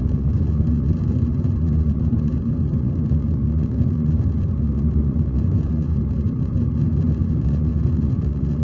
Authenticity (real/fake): fake